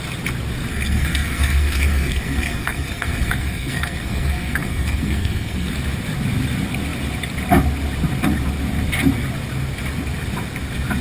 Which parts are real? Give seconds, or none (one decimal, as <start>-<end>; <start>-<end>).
0.0-0.7; 5.7-11.0